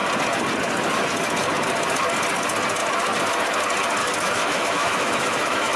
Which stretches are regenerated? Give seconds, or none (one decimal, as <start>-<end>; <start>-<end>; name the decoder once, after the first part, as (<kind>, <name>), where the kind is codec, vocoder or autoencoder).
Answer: 4.0-5.8 (autoencoder, DAC-VAE)